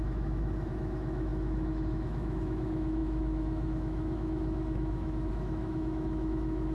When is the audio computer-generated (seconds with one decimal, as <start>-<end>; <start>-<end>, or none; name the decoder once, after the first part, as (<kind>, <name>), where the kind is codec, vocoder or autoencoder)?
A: 0.0-6.7 (autoencoder, DAC-VAE)